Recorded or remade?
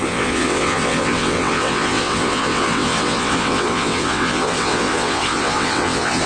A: remade